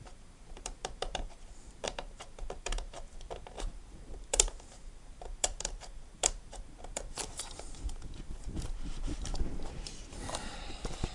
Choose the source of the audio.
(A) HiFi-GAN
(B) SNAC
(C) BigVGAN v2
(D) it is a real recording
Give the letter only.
C